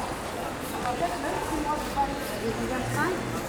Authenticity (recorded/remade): recorded